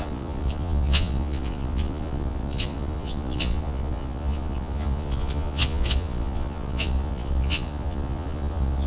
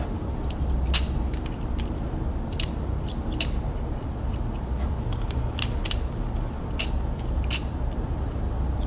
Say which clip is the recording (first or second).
second